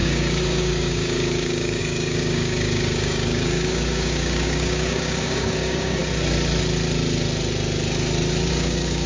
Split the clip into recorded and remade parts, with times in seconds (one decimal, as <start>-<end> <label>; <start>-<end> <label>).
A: 0.0-6.0 remade; 6.0-8.5 recorded; 8.5-9.1 remade